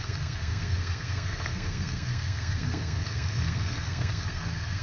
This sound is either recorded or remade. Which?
remade